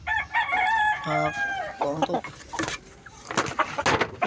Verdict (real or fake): real